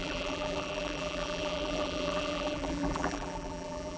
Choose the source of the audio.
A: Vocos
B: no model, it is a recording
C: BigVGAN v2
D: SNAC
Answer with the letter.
C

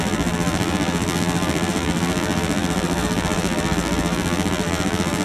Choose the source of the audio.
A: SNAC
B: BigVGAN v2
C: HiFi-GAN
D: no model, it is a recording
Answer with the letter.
B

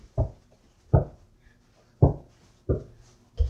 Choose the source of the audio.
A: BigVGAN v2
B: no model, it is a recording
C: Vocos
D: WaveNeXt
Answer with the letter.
B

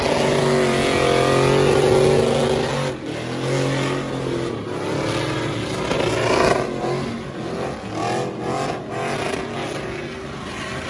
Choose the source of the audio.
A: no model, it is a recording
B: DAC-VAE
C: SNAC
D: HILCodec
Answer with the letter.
A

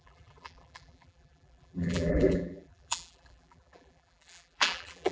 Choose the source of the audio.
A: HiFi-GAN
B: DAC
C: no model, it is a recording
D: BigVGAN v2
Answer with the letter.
D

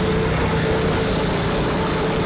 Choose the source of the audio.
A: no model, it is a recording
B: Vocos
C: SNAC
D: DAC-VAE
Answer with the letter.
A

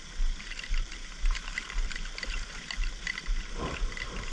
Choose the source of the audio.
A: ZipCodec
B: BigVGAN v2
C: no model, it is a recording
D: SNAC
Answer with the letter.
B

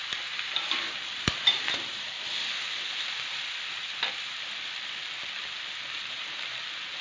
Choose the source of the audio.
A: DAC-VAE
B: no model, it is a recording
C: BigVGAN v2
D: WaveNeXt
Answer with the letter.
C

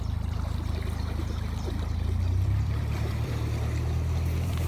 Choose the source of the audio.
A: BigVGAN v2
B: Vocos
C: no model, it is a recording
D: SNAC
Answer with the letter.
A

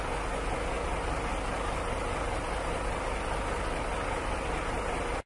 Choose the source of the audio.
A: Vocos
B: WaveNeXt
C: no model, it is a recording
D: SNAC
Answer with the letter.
C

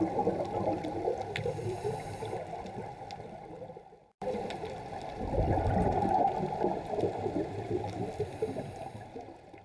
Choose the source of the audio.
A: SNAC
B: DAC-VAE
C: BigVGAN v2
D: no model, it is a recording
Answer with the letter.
C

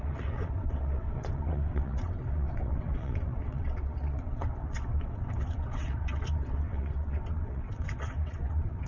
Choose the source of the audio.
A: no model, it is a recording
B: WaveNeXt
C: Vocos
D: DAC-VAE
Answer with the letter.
B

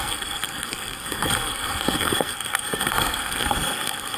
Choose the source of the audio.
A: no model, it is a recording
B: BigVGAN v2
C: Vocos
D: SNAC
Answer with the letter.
D